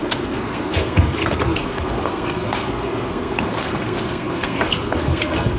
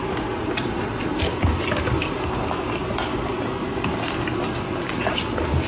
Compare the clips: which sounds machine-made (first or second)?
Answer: first